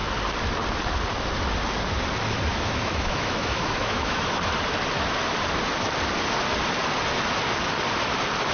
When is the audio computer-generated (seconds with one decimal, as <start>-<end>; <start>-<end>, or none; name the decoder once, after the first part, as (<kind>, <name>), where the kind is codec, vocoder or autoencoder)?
2.5-4.4 (autoencoder, DAC-VAE)